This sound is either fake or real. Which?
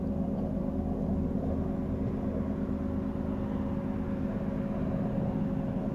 real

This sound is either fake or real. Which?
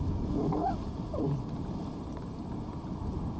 real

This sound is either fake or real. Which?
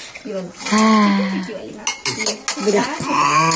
real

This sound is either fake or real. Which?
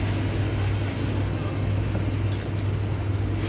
real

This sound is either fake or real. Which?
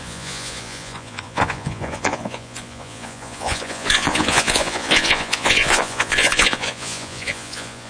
fake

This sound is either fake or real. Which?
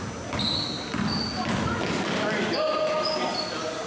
real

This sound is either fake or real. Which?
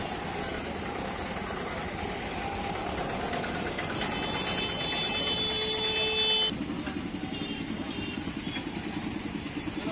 real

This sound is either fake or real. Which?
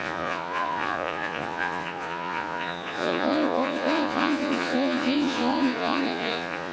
fake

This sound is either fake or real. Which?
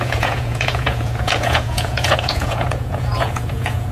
fake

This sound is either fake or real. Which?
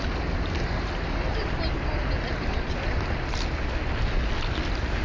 real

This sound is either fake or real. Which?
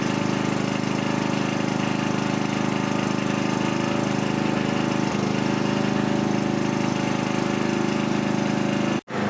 real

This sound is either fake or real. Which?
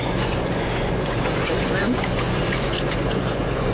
fake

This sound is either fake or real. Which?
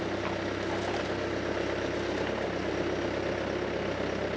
real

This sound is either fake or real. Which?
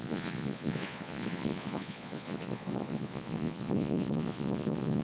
fake